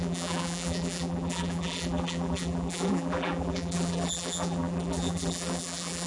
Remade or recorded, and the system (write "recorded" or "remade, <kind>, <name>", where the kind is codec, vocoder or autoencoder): remade, vocoder, BigVGAN v2